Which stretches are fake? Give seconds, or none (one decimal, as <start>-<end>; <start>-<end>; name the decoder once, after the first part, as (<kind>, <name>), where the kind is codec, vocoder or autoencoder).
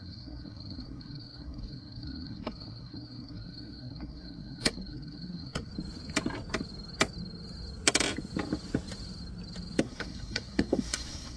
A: 0.0-5.7 (codec, SNAC); 9.8-11.4